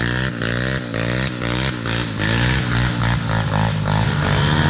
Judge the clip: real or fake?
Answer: real